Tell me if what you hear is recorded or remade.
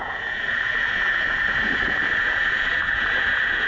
remade